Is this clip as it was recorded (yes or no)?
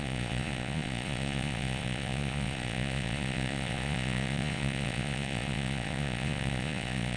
no